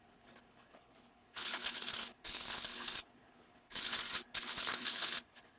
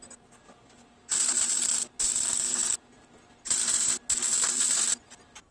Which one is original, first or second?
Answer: second